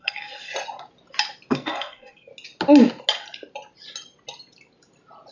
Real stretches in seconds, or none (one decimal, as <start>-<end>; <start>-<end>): 0.5-1.5; 2.3-5.3